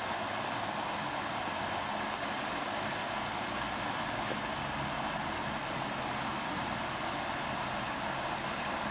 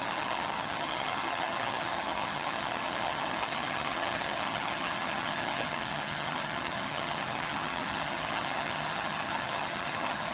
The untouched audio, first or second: first